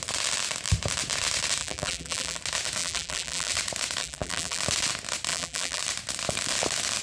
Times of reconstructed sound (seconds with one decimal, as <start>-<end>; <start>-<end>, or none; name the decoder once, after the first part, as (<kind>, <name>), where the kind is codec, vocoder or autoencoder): 1.6-2.4 (vocoder, BigVGAN v2); 2.8-3.5; 4.0-4.6; 5.3-5.8

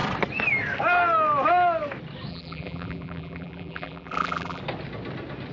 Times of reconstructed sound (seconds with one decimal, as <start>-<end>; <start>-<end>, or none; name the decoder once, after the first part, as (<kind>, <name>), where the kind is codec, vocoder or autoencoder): 2.3-4.6 (vocoder, BigVGAN v2)